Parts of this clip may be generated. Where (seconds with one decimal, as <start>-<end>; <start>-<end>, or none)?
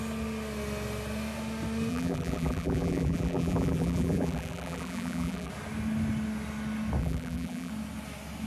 1.9-5.5; 7.0-7.7